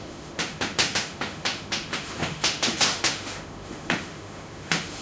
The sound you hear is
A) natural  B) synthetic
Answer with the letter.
B